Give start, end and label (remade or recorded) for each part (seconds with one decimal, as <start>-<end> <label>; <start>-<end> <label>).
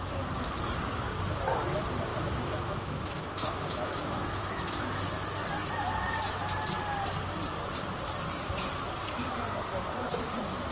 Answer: 0.0-2.1 recorded; 2.1-5.1 remade; 5.1-10.7 recorded